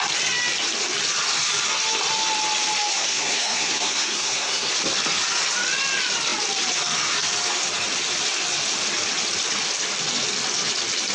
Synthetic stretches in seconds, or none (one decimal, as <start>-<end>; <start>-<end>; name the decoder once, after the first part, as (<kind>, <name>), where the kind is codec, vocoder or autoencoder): 2.9-4.7 (codec, SNAC)